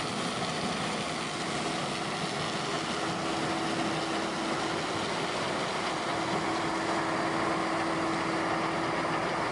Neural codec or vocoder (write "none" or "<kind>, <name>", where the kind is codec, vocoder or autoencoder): none